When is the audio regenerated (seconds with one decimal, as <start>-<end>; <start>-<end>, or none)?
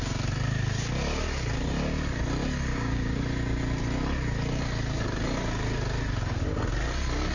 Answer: 2.7-3.2